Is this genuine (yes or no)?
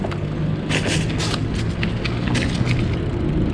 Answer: yes